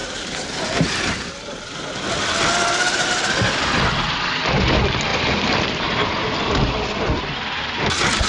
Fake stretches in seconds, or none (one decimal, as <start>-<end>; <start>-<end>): 0.0-1.3